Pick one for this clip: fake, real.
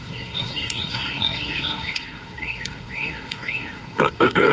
fake